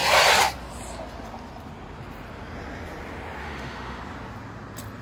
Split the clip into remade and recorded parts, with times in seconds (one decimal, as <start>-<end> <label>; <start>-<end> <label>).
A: 0.0-3.4 recorded; 3.4-4.0 remade; 4.0-5.0 recorded